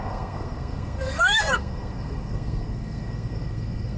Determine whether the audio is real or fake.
fake